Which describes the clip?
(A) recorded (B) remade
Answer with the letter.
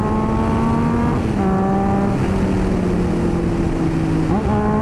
A